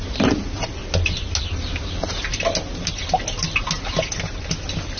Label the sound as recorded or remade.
recorded